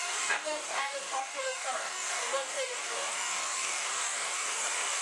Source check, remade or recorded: remade